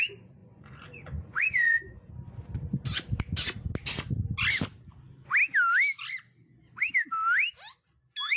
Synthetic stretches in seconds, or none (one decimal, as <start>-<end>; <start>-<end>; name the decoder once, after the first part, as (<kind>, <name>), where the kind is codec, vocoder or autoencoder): 0.4-2.1 (vocoder, Vocos)

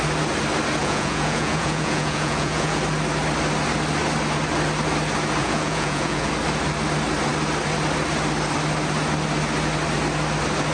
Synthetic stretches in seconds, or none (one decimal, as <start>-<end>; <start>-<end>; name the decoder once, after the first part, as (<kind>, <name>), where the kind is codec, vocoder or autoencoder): 0.8-2.8 (vocoder, Vocos); 5.4-6.3

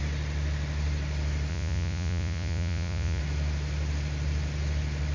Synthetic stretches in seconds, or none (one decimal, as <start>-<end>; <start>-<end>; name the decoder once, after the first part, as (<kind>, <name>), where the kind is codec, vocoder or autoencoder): 1.5-3.2 (vocoder, Vocos)

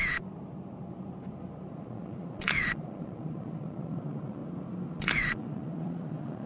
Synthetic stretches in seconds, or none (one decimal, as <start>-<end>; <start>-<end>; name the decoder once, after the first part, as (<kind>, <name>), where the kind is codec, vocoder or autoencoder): 1.7-4.4 (vocoder, Vocos); 4.9-6.5

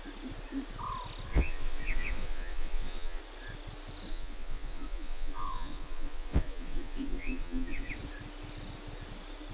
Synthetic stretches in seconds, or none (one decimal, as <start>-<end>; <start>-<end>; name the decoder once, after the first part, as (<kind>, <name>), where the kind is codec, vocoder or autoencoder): 1.3-3.2 (vocoder, Vocos); 4.1-7.9

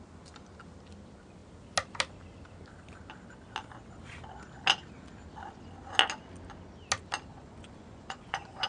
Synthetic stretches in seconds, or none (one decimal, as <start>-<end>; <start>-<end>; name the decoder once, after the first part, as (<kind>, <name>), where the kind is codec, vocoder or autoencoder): 7.3-8.7 (vocoder, Vocos)